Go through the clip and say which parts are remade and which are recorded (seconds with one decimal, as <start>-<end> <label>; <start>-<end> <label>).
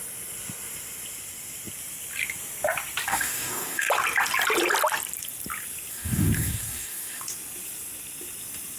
0.0-3.1 recorded; 3.1-3.9 remade; 3.9-5.9 recorded; 5.9-7.2 remade; 7.2-8.8 recorded